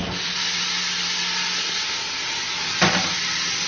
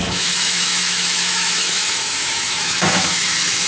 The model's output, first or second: second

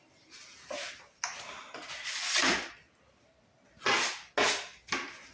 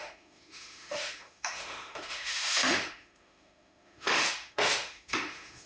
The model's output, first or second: second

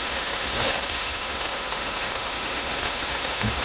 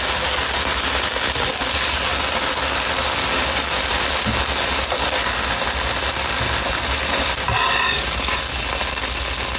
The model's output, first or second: first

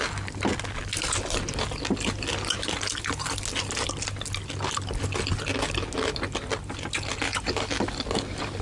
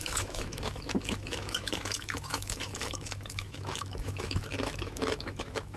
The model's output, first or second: second